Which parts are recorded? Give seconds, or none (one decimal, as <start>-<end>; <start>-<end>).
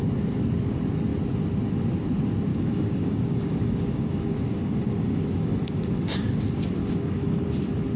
0.0-2.5; 6.3-6.8; 7.6-8.0